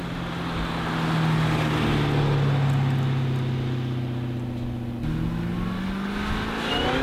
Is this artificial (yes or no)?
no